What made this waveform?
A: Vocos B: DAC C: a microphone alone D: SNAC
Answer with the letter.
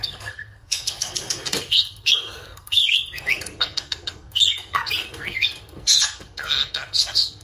D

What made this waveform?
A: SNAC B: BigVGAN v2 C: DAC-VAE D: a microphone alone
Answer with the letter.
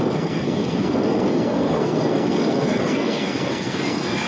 A